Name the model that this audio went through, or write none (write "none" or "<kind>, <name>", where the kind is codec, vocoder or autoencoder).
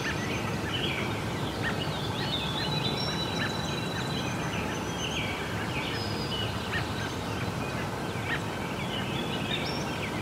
none